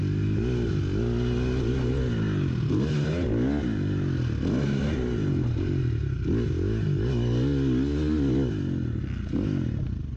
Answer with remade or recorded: recorded